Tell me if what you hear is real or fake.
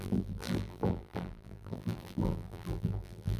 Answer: fake